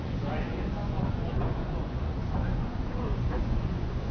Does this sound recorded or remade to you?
remade